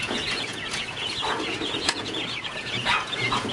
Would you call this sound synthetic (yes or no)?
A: yes